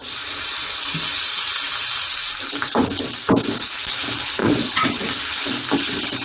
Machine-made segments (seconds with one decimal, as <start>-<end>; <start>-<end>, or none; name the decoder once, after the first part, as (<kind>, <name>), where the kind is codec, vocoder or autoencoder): 4.4-5.0 (vocoder, Vocos)